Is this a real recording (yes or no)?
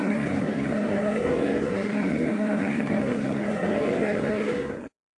no